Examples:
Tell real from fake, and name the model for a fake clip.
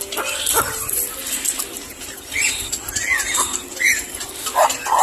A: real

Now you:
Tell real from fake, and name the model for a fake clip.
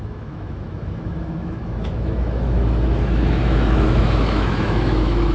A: fake, autoencoder, DAC-VAE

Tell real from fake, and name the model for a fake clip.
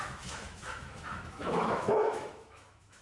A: fake, autoencoder, DAC-VAE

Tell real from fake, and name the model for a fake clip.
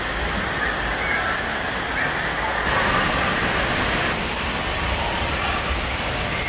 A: real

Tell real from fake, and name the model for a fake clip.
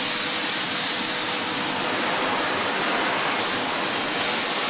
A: real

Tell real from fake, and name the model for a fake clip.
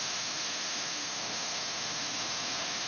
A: fake, autoencoder, DAC-VAE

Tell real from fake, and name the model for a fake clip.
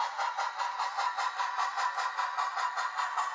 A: real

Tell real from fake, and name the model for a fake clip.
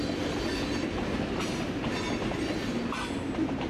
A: real